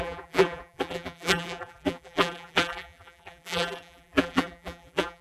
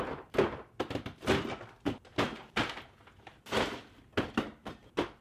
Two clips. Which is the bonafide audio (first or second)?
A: second